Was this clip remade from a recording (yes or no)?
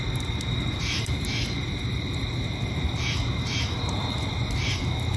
yes